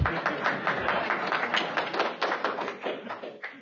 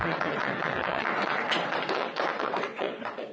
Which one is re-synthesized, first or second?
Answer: second